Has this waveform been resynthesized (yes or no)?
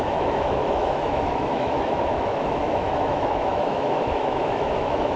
yes